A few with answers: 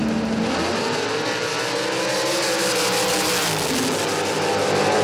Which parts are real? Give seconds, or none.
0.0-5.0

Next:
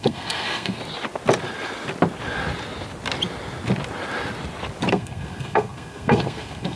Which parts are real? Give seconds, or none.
0.8-4.9

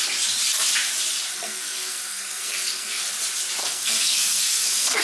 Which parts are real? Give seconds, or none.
0.0-1.3; 3.1-3.6

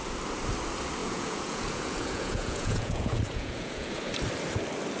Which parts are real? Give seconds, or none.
0.0-1.0; 4.0-5.0

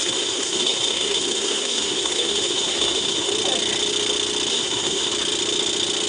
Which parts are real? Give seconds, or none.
3.3-4.5; 5.1-6.1

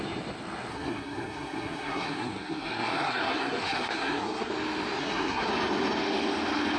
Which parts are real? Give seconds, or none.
0.0-0.7; 4.5-5.0; 5.5-6.8

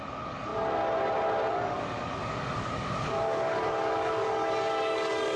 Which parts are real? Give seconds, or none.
0.5-1.5